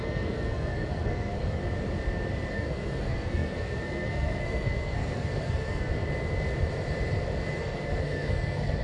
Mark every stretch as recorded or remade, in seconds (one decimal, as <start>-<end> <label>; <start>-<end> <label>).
0.0-1.6 remade; 1.6-2.5 recorded; 2.5-5.9 remade; 5.9-7.6 recorded; 7.6-8.8 remade